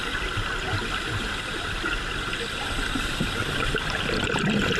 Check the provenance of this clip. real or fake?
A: real